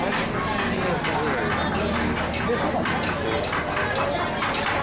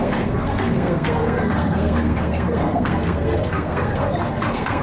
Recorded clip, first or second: first